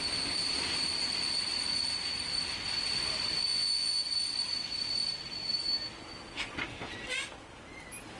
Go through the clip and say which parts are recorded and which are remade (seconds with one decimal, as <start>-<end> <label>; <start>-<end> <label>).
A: 0.0-3.5 recorded; 3.5-4.0 remade; 4.0-8.2 recorded